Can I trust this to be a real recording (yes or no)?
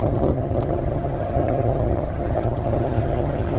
no